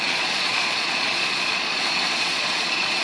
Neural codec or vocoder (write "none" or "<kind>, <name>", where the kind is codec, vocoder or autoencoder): vocoder, Vocos